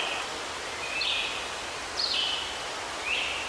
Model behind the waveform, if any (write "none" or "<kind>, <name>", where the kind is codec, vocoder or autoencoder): none